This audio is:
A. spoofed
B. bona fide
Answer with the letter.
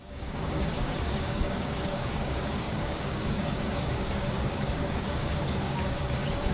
A